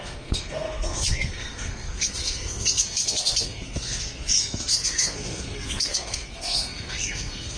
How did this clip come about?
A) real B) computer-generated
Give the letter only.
B